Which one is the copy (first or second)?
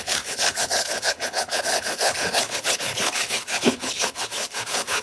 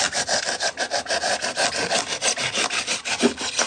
first